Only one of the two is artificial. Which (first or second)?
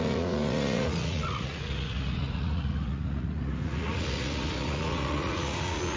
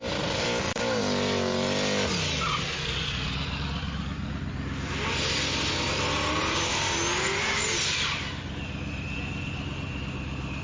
first